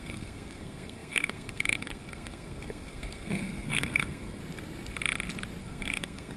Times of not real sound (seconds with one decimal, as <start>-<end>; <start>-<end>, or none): 0.0-4.4; 5.6-6.4